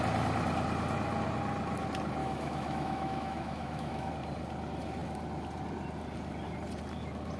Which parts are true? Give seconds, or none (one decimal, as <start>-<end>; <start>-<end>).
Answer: 0.0-2.2; 4.1-7.4